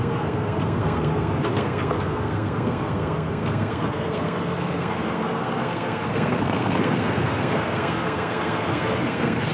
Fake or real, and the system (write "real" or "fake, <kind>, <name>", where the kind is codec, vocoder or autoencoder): fake, codec, SNAC